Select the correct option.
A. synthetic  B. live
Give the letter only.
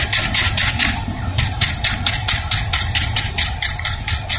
B